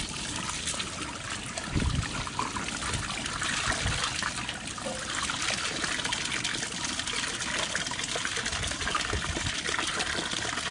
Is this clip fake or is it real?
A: real